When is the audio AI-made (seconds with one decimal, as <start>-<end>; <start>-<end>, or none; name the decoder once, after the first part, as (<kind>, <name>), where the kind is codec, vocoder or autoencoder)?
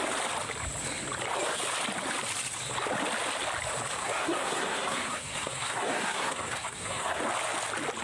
4.0-7.2 (codec, SNAC)